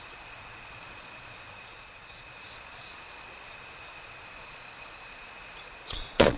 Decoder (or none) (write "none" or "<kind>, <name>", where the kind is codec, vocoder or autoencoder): vocoder, Vocos